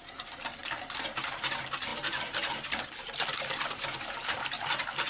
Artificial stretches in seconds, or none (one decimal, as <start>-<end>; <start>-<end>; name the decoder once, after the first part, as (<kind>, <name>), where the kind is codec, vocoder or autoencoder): 0.0-5.1 (vocoder, BigVGAN v2)